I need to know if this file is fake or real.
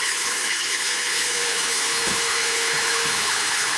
fake